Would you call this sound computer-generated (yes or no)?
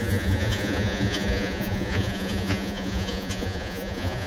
yes